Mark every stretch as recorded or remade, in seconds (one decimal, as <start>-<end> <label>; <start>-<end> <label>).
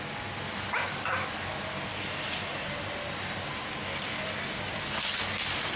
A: 0.0-5.8 recorded